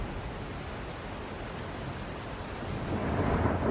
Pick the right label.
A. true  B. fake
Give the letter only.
A